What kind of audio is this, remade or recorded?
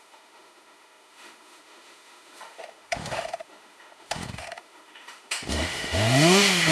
remade